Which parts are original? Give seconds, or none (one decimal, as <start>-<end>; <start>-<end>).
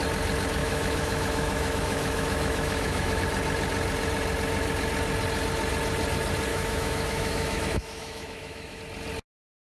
0.0-0.6; 3.2-6.5; 8.8-9.6